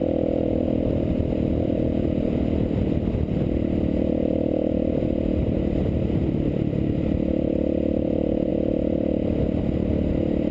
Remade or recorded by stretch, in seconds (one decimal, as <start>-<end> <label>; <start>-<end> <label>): 0.0-5.0 remade; 5.0-10.5 recorded